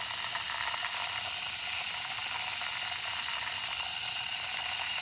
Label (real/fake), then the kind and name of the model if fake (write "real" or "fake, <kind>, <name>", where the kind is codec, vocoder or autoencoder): real